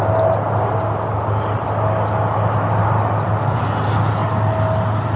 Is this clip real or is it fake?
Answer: real